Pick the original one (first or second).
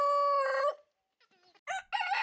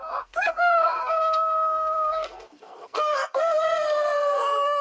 first